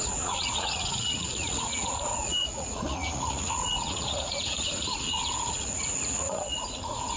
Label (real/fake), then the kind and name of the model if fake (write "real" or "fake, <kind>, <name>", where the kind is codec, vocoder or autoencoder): fake, vocoder, Vocos